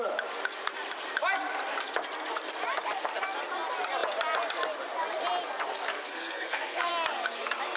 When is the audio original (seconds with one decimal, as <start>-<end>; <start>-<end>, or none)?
0.0-5.9; 6.9-7.8